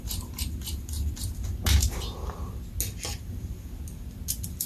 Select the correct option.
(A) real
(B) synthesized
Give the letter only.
A